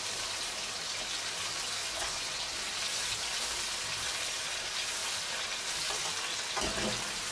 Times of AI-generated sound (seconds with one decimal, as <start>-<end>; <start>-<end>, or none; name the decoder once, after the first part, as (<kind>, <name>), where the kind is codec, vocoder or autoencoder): 1.8-2.4 (vocoder, Vocos)